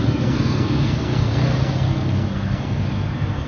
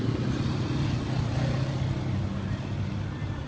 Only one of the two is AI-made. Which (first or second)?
first